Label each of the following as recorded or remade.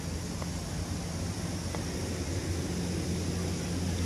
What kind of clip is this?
recorded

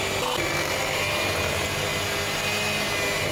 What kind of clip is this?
recorded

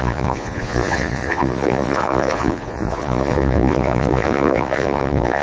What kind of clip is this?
remade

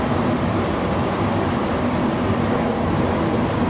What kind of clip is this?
remade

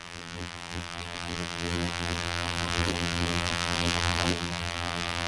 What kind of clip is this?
remade